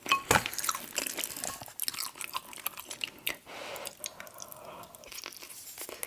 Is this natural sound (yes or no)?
yes